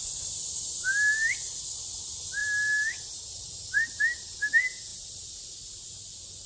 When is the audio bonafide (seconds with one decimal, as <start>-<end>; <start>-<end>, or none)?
0.0-6.5

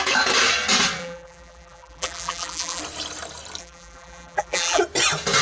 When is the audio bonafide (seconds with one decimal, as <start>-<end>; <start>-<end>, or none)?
0.0-1.0; 2.8-3.6; 4.8-5.4

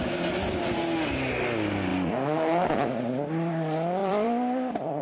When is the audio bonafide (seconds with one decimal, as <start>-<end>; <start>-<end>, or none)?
0.0-4.0

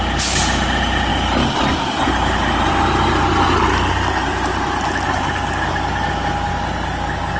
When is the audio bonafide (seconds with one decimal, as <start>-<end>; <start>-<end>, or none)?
0.0-7.4

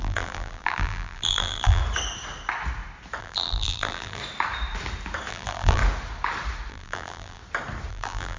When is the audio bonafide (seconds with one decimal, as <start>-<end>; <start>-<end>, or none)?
1.8-3.2; 4.2-5.3; 5.8-6.7; 7.4-7.9

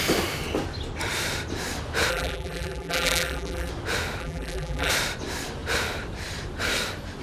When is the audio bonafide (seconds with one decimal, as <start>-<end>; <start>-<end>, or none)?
0.0-2.1; 3.7-4.2; 4.9-7.2

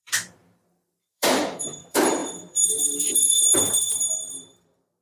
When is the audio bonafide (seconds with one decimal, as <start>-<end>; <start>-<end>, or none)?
none

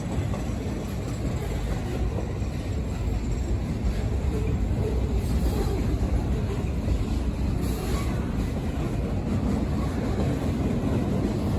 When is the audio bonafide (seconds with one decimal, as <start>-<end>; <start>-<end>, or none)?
0.0-11.6